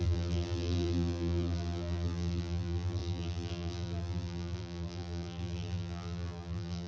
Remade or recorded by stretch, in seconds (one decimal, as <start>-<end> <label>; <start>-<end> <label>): 0.0-6.9 remade